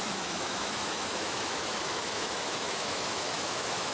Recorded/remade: remade